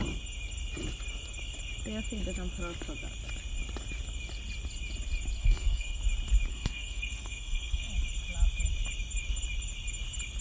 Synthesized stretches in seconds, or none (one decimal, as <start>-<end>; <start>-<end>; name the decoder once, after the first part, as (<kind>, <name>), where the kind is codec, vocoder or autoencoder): 5.4-6.0 (codec, SNAC); 6.5-7.9